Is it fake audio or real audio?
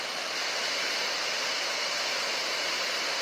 fake